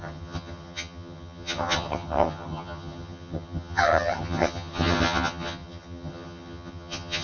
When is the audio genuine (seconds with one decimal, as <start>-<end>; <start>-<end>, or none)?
none